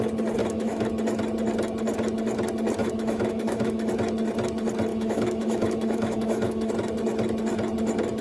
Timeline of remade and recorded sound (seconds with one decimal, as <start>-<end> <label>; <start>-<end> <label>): 0.0-0.4 recorded; 0.4-0.9 remade; 0.9-2.8 recorded; 2.8-3.9 remade; 3.9-4.9 recorded; 4.9-6.7 remade; 6.7-8.2 recorded